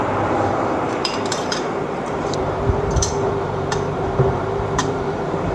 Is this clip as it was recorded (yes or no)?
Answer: no